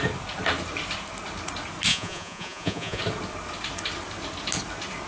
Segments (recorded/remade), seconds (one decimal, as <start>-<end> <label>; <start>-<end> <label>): 0.0-1.9 recorded; 1.9-3.0 remade; 3.0-5.1 recorded